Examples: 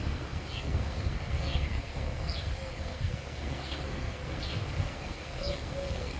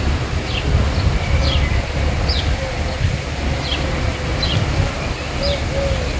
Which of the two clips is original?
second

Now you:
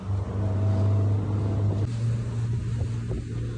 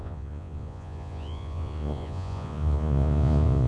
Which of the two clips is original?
first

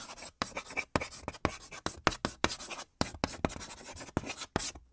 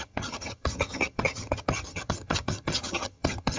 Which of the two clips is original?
first